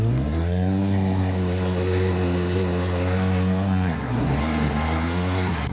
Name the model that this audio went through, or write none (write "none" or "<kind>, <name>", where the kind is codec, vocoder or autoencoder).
codec, SNAC